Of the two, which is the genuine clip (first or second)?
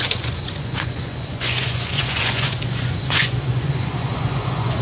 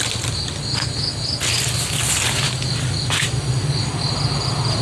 second